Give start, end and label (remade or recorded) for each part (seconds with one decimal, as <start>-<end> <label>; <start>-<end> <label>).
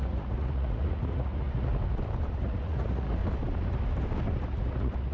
0.0-1.7 remade; 1.7-2.3 recorded; 2.3-3.2 remade; 3.2-4.4 recorded; 4.4-5.1 remade